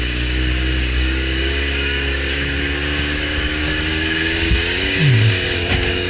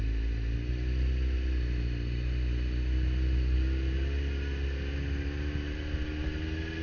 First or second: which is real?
second